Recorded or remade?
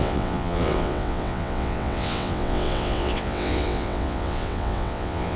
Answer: remade